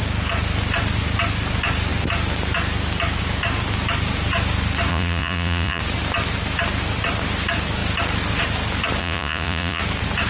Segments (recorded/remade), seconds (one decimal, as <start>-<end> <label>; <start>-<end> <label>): 0.0-4.9 recorded; 4.9-5.8 remade; 5.8-9.0 recorded; 9.0-9.8 remade; 9.8-10.3 recorded